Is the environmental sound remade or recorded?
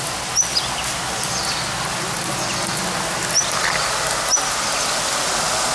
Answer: recorded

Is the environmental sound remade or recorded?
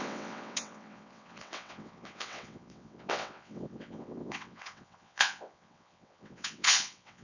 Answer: remade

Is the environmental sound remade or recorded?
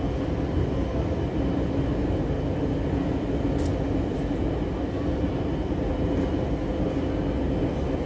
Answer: recorded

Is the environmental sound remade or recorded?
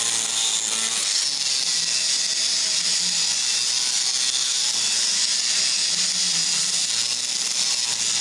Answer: recorded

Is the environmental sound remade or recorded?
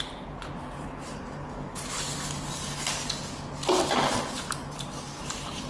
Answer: recorded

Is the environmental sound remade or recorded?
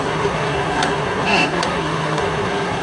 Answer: remade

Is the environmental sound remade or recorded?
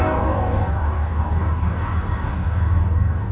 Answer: remade